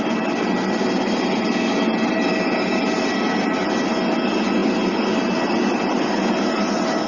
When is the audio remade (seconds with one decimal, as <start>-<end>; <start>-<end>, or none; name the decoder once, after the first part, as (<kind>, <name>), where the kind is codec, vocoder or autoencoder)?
none